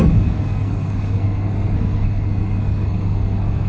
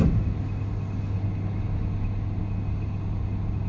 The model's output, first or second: first